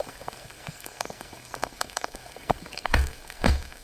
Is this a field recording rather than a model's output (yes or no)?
no